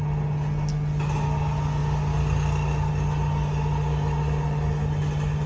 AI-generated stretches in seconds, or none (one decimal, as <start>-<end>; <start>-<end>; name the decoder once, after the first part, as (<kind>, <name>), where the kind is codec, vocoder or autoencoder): none